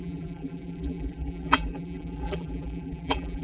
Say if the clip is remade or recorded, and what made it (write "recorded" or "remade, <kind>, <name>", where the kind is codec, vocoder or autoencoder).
remade, vocoder, BigVGAN v2